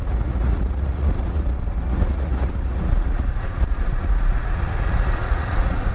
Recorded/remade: remade